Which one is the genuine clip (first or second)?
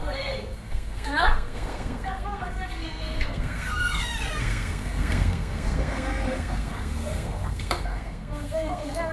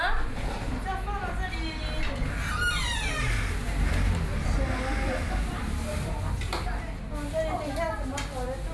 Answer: second